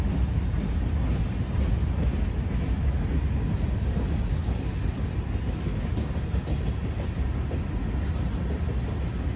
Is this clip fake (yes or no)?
no